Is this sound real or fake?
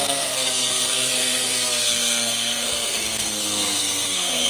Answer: fake